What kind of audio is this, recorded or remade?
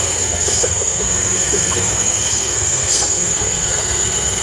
remade